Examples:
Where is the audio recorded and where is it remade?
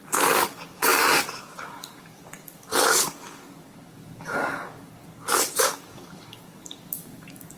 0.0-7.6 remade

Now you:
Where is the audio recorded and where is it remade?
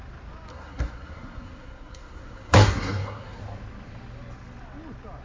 0.0-0.5 recorded; 0.5-3.4 remade; 3.4-5.2 recorded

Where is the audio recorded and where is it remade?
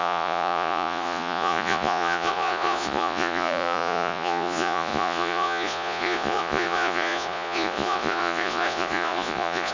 0.0-9.7 remade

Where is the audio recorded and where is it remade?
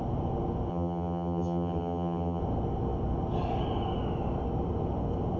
0.0-0.7 recorded; 0.7-2.4 remade; 2.4-5.4 recorded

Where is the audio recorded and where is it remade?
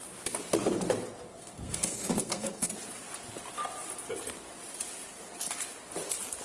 0.0-1.3 recorded; 1.3-2.7 remade; 2.7-6.4 recorded